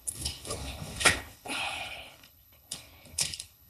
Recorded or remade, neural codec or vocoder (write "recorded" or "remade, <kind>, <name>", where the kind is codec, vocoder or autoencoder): remade, codec, HILCodec